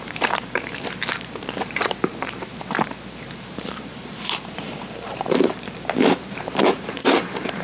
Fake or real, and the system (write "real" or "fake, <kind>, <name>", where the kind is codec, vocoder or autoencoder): fake, vocoder, BigVGAN v2